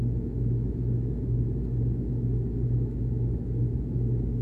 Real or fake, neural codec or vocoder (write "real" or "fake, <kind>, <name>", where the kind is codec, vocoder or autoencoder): fake, autoencoder, DAC-VAE